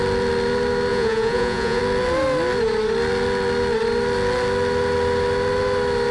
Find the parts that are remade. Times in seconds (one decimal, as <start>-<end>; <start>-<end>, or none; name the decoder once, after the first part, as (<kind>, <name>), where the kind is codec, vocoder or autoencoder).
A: 0.9-1.8 (vocoder, Vocos)